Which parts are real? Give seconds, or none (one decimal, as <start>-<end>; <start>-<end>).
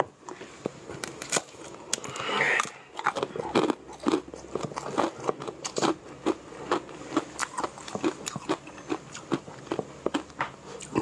0.0-11.0